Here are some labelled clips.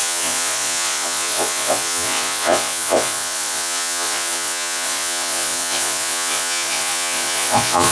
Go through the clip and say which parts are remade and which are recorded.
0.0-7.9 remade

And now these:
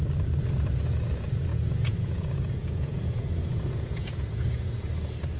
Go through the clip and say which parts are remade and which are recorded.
0.0-1.5 recorded; 1.5-4.7 remade; 4.7-5.4 recorded

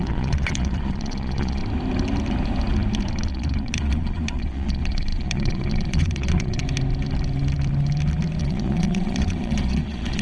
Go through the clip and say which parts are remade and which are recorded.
0.0-1.6 remade; 1.6-3.3 recorded; 3.3-6.6 remade; 6.6-8.4 recorded; 8.4-10.2 remade

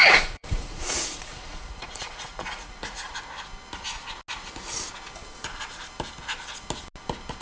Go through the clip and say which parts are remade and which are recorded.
0.0-3.1 remade; 3.1-7.4 recorded